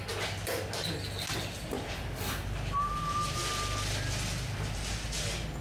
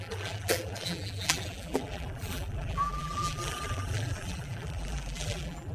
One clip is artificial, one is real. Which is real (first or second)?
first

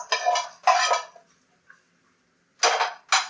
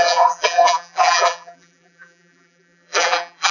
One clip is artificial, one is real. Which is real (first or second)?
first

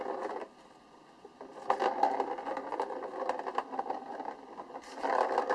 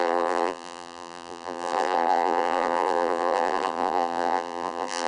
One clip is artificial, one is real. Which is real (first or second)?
first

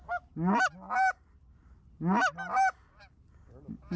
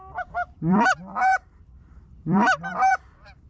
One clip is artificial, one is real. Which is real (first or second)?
first